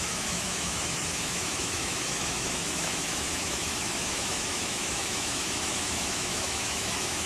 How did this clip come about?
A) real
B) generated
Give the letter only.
B